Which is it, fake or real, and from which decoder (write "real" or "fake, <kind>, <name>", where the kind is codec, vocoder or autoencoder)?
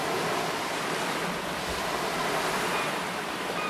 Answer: fake, vocoder, BigVGAN v2